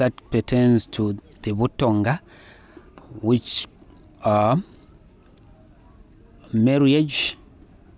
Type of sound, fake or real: real